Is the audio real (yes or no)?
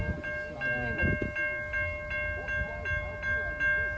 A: yes